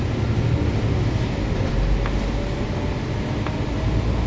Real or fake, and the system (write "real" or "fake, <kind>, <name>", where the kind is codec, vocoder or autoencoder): real